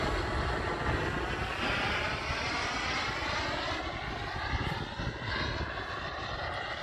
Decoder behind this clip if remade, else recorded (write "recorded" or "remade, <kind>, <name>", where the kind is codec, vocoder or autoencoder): recorded